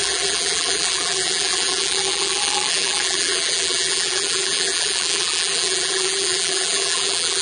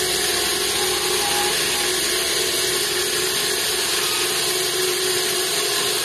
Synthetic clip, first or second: first